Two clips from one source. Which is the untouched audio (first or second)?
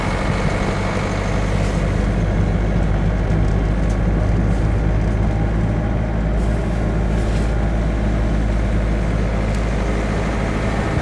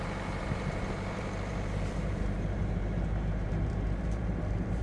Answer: first